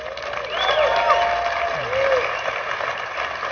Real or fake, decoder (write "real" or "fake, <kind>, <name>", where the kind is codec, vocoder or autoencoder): real